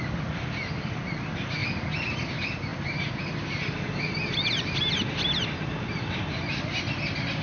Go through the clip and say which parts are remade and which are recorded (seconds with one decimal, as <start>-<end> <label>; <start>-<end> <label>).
0.0-7.4 recorded